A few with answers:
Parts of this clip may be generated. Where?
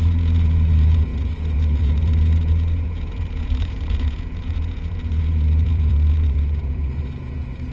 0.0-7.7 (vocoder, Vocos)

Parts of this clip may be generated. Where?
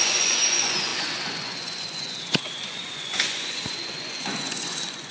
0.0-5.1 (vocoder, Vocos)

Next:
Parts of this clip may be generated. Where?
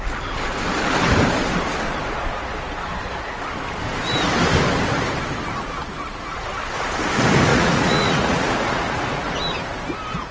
7.5-9.3 (vocoder, Vocos)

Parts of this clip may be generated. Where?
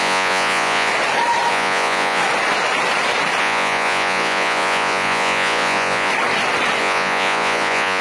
0.0-0.9 (vocoder, Vocos); 1.5-2.2; 3.4-6.1; 6.8-8.0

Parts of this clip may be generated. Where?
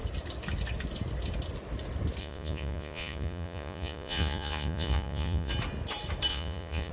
2.2-5.5 (vocoder, Vocos); 6.3-6.9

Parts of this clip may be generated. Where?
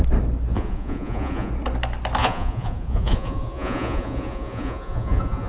0.5-1.5 (vocoder, Vocos); 2.2-5.5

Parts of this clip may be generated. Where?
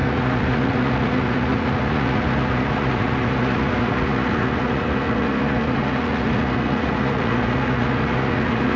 0.0-8.8 (vocoder, Vocos)